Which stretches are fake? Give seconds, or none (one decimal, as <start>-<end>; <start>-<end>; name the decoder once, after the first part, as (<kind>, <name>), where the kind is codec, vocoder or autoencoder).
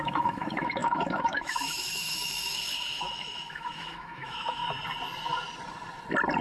0.0-4.6 (autoencoder, DAC-VAE)